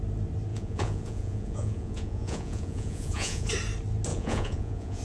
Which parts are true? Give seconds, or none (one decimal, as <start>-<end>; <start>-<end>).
0.0-0.5; 3.5-4.1